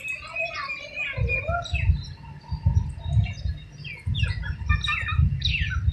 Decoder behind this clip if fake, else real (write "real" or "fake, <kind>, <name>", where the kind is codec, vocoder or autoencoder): real